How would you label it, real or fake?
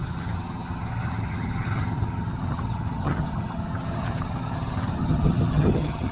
fake